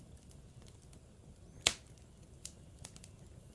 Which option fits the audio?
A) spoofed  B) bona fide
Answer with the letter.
B